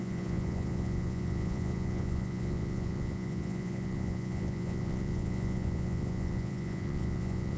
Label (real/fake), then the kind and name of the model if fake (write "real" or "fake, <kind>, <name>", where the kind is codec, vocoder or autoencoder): fake, vocoder, Vocos